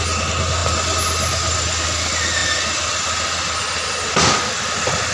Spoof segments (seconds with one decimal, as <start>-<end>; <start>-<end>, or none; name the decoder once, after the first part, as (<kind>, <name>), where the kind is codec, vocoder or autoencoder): none